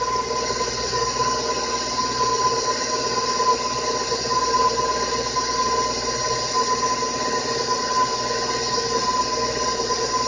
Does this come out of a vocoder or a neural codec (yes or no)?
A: no